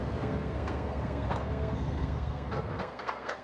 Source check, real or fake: fake